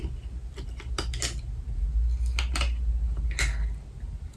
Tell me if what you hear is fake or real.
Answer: real